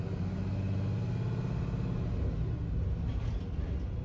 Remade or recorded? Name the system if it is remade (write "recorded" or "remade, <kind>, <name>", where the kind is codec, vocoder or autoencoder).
recorded